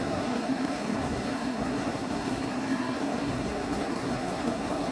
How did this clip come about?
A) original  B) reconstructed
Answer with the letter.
B